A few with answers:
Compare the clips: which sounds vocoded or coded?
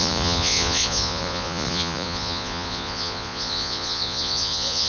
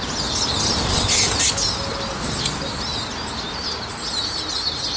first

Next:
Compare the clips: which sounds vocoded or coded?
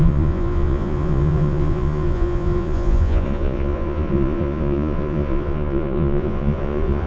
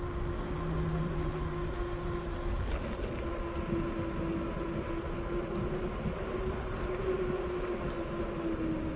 first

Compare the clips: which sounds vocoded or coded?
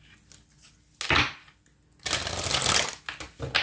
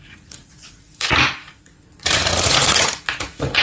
second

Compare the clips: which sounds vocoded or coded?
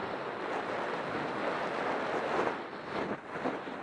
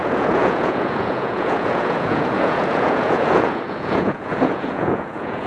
second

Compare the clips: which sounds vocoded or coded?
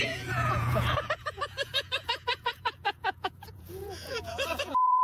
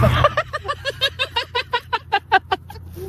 first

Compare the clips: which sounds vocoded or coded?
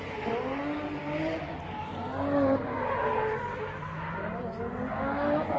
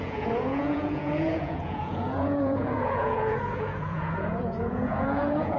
second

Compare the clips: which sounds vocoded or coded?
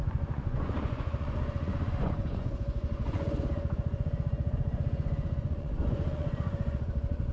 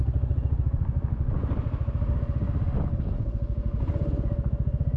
first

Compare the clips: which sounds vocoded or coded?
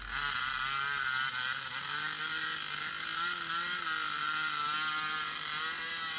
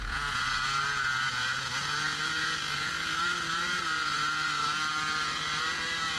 second